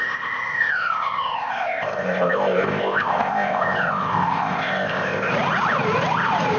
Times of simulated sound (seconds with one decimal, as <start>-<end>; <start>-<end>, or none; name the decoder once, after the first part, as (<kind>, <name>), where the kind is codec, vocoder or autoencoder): 0.0-5.3 (codec, ZipCodec)